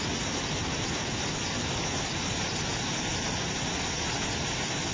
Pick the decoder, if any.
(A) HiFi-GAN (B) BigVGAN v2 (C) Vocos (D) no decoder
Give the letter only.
D